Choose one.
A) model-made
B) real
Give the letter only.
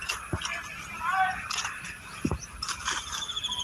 B